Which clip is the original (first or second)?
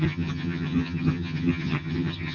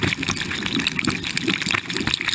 second